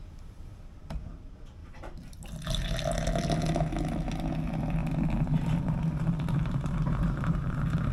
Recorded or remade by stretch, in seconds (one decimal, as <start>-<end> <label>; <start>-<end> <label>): 0.0-1.6 recorded; 1.6-2.2 remade; 2.2-4.8 recorded; 4.8-7.9 remade